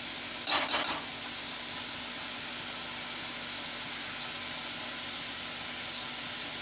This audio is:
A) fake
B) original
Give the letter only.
B